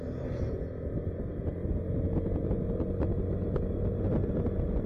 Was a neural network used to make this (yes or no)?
no